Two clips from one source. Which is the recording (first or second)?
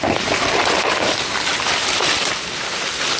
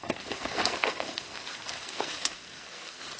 first